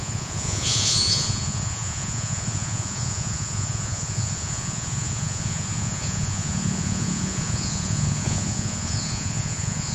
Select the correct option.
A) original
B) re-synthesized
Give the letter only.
B